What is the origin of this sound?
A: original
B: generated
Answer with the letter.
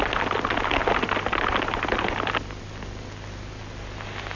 A